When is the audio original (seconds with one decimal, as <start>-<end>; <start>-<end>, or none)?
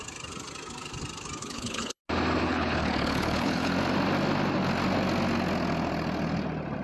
0.0-1.4; 2.0-2.4; 3.7-6.8